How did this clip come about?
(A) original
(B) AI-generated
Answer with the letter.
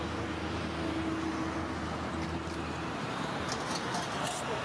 A